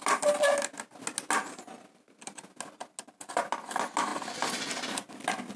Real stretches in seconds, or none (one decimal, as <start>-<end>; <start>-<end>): 0.0-5.6